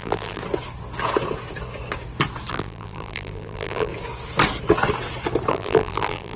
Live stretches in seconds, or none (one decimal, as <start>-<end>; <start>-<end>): 0.4-2.5; 3.9-5.5